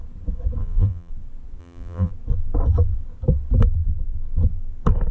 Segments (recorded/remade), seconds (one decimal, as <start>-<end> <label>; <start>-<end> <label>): 0.0-0.6 recorded; 0.6-1.1 remade; 1.1-1.6 recorded; 1.6-2.1 remade; 2.1-5.1 recorded